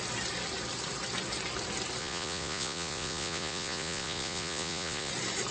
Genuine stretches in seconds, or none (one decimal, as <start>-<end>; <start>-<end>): 0.0-2.0; 5.1-5.5